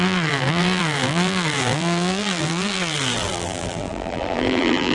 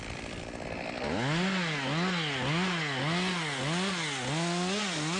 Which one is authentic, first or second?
second